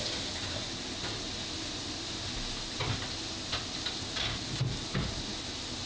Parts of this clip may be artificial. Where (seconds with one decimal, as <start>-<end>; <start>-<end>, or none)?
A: none